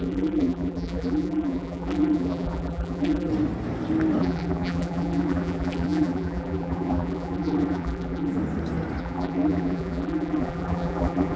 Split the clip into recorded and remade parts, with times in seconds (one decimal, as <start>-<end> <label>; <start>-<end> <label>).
0.0-3.3 remade; 3.3-4.2 recorded; 4.2-8.4 remade; 8.4-9.0 recorded; 9.0-11.4 remade